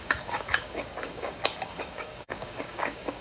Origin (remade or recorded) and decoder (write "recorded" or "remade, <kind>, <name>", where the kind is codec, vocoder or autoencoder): remade, codec, DAC